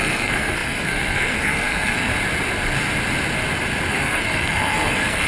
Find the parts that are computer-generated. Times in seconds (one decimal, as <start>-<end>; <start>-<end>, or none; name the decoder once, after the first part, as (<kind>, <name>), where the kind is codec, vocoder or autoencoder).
0.0-2.1 (codec, SNAC); 3.9-5.3